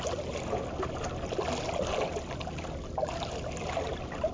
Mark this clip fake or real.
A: real